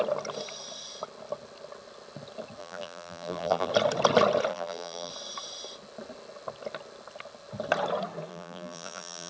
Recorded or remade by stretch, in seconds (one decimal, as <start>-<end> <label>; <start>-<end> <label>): 0.0-2.6 recorded; 2.6-3.7 remade; 3.7-4.5 recorded; 4.5-5.1 remade; 5.1-8.3 recorded; 8.3-9.3 remade